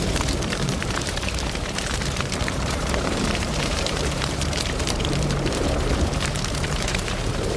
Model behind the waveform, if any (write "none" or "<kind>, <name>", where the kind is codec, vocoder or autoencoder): vocoder, BigVGAN v2